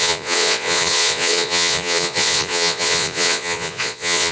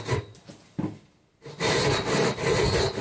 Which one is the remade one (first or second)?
first